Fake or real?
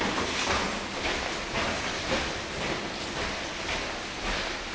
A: fake